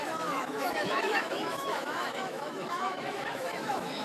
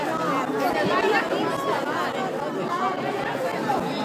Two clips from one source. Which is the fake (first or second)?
first